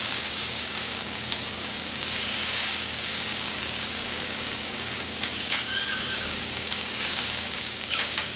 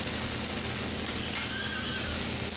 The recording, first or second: second